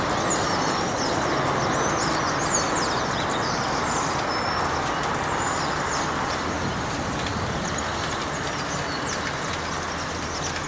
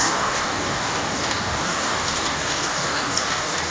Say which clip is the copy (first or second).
second